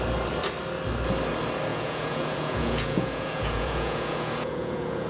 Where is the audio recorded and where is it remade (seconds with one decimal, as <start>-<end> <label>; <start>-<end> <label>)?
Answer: 0.0-1.7 recorded; 1.7-5.1 remade